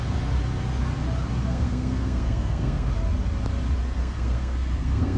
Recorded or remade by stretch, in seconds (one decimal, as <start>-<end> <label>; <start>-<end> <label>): 0.0-1.4 recorded; 1.4-2.9 remade; 2.9-4.0 recorded; 4.0-5.2 remade